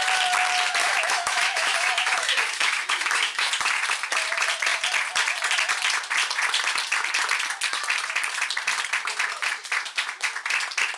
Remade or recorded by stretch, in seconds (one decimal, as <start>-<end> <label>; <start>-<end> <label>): 0.0-0.8 recorded; 0.8-3.5 remade; 3.5-11.0 recorded